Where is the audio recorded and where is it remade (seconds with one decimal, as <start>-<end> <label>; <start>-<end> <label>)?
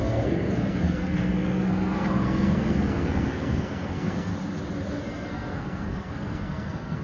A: 0.0-4.3 remade; 4.3-4.9 recorded; 4.9-7.0 remade